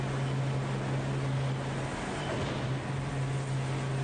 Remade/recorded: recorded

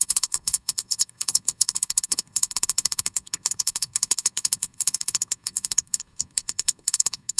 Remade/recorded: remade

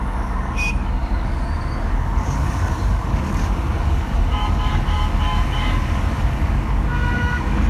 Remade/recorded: remade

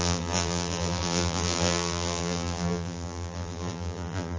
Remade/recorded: remade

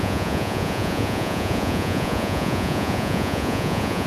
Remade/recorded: remade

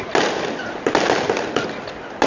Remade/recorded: recorded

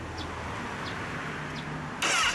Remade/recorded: recorded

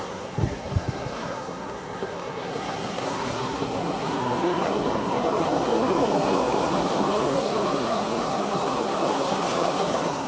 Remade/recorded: remade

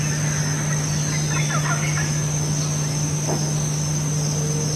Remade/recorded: recorded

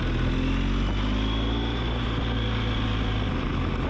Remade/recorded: recorded